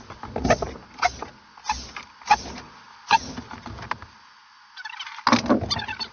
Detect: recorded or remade recorded